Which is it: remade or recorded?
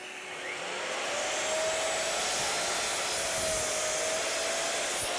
recorded